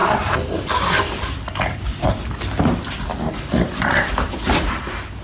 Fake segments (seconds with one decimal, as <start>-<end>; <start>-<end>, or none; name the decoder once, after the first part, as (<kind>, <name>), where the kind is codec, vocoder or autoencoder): none